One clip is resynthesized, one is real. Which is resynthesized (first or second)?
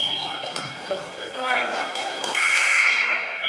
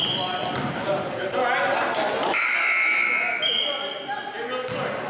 first